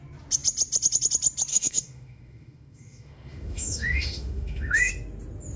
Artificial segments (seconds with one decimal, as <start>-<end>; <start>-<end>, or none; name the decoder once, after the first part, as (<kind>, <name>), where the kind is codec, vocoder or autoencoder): 1.5-4.9 (autoencoder, DAC-VAE)